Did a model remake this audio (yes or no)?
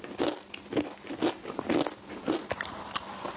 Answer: no